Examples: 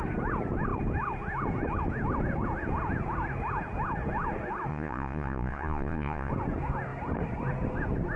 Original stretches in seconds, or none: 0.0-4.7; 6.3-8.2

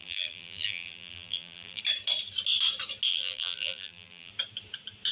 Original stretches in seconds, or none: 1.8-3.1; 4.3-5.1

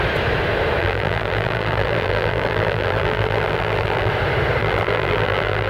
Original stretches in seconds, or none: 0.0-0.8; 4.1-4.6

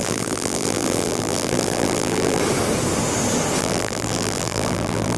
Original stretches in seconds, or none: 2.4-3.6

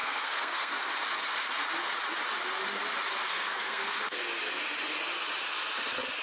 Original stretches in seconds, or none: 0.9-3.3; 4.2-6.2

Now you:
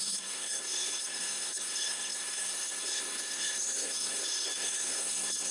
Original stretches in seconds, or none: none

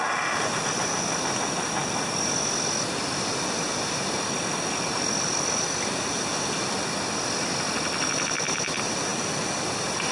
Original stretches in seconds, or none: 0.0-10.1